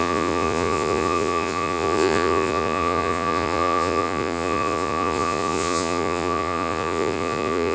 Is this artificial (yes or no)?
yes